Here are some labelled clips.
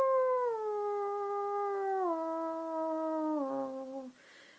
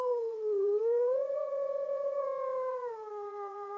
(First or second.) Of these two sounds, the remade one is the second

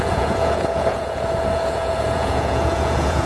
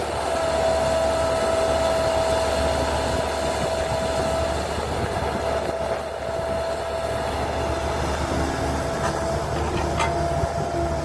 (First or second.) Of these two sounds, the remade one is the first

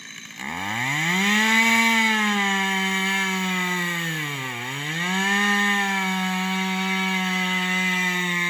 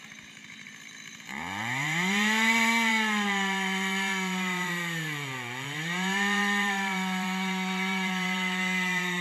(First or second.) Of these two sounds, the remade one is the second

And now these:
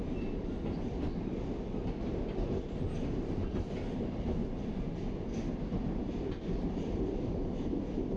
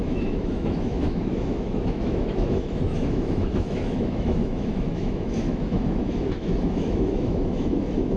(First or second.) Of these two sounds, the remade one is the second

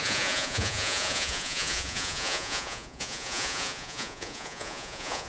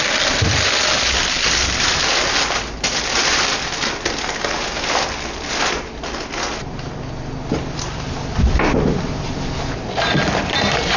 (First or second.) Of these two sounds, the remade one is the first